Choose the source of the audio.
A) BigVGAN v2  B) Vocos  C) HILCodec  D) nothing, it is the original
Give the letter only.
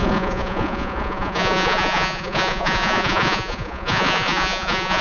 B